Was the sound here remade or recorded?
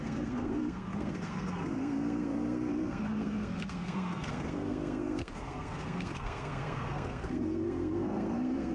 remade